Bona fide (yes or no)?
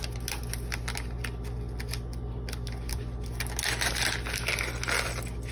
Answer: yes